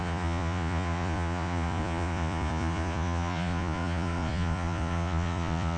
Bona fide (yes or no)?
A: no